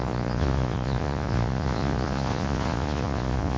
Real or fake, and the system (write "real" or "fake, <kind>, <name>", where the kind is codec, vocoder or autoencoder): fake, vocoder, Vocos